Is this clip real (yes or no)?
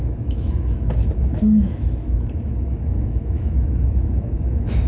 no